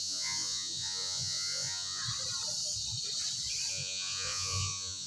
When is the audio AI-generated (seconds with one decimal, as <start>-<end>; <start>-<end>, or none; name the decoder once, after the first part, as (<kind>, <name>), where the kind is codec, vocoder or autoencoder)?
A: 0.0-2.0 (vocoder, Vocos); 3.7-5.1